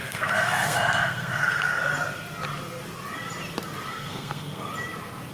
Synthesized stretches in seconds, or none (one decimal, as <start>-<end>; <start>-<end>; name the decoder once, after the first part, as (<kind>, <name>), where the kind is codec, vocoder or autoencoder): 0.0-1.9 (codec, SNAC); 3.9-4.7